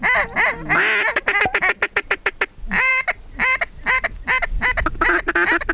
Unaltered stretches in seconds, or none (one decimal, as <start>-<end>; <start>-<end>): 0.0-5.7